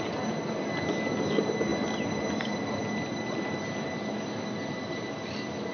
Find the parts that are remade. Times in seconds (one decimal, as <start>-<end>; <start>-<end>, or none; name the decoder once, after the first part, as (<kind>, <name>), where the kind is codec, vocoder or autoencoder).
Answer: none